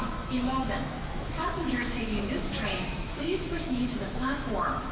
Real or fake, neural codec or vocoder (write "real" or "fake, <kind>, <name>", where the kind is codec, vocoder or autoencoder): fake, autoencoder, DAC-VAE